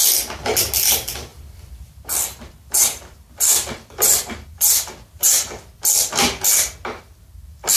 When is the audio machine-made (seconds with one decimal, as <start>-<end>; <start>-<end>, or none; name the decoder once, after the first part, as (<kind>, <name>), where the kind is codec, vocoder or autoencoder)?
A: 1.3-5.7 (vocoder, BigVGAN v2)